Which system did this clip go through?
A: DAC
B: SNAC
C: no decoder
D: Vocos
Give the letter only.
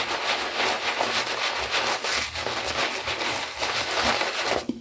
C